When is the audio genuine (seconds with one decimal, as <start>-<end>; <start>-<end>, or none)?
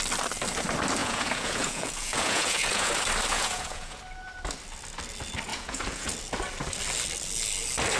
0.0-1.0; 2.9-3.3; 4.0-5.5; 6.1-8.0